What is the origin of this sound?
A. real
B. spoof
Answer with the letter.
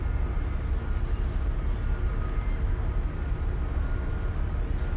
A